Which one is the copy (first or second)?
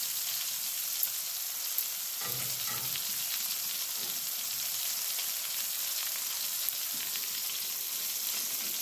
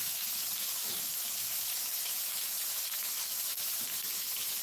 second